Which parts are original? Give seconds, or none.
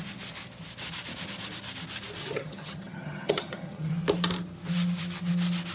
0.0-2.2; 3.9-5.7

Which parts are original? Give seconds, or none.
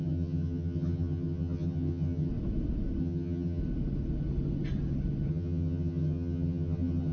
2.3-3.0; 3.6-5.3